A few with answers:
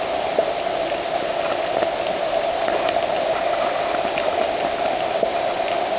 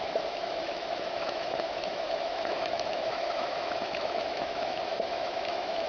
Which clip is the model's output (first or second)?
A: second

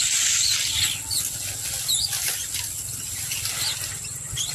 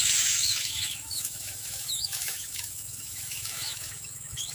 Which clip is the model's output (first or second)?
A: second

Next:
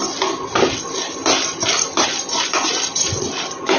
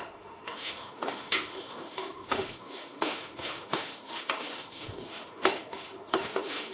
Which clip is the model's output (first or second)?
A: second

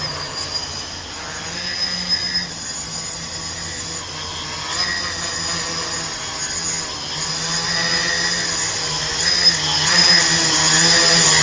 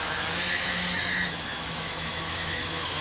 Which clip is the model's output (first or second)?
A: second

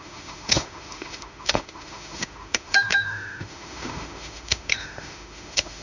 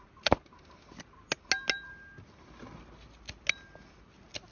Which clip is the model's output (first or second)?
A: first